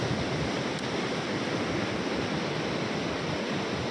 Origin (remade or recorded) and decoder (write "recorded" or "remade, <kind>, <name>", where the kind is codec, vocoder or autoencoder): recorded